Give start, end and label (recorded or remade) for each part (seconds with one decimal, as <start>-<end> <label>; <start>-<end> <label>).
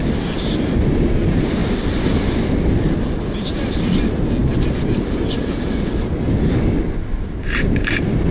0.0-8.3 recorded